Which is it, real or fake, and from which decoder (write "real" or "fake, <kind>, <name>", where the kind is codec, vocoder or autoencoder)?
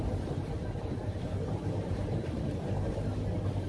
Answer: fake, vocoder, BigVGAN v2